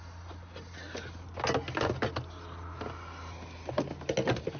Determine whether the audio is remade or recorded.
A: recorded